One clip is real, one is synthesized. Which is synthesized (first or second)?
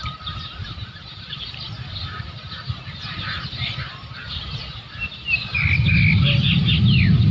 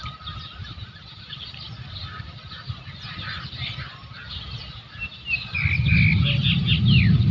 first